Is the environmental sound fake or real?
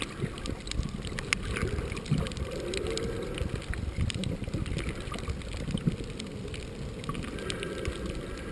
real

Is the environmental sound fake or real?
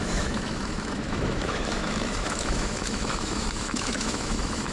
fake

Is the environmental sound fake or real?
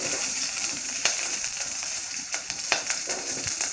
fake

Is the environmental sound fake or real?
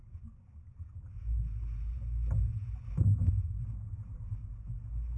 real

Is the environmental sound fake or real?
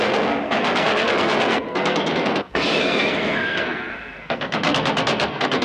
fake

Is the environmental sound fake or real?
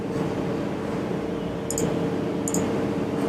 real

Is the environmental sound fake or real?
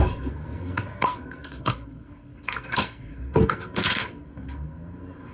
fake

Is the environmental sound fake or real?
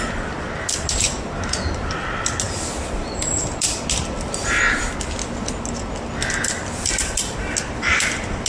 real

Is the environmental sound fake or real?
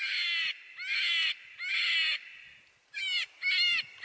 real